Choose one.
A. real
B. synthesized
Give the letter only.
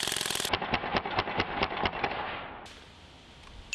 A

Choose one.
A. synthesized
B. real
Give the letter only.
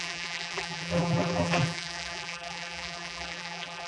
A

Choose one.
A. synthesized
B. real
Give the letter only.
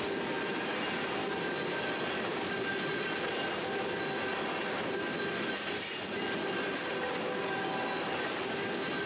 B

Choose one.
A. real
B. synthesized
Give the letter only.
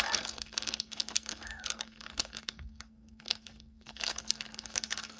B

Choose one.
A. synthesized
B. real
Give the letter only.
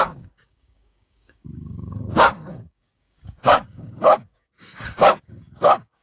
A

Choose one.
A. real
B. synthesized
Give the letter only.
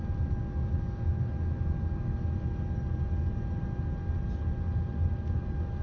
A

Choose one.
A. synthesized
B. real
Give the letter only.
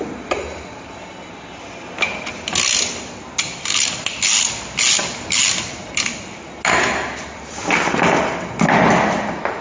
B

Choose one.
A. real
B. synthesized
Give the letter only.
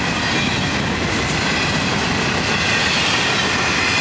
A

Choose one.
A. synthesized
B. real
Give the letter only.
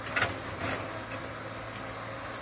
B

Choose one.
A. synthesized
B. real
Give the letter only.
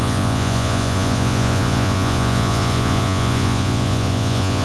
A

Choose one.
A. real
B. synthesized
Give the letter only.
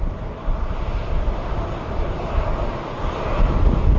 A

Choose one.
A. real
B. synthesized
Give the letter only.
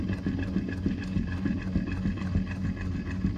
A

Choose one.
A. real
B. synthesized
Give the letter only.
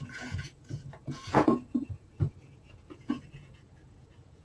B